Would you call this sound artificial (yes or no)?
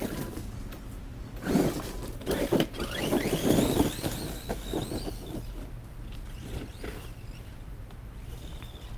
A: no